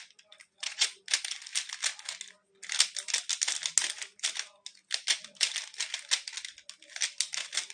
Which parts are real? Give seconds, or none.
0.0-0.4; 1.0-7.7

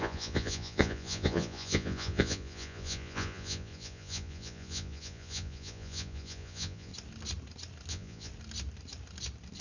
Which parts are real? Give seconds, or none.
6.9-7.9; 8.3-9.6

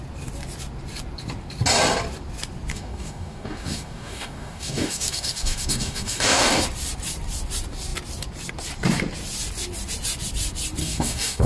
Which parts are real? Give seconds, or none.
0.0-2.7; 6.6-10.8